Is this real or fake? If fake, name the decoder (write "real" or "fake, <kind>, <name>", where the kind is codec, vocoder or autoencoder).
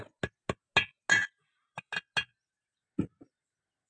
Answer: real